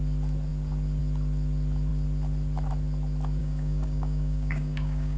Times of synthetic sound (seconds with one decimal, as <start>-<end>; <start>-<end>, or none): 3.4-5.2

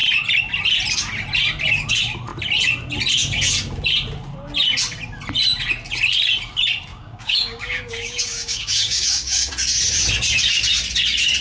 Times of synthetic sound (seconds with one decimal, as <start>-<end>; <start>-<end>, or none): 6.9-9.5

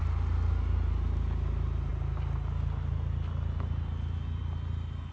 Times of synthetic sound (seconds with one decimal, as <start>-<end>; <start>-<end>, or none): none

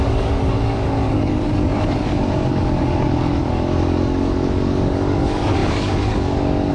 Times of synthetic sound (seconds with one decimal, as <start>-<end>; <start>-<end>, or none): 0.0-6.7

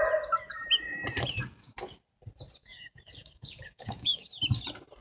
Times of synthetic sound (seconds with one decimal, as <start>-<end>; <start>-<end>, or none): 2.6-4.3